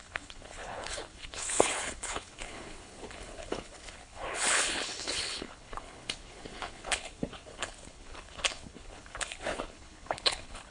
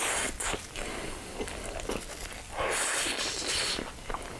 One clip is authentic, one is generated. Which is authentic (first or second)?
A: second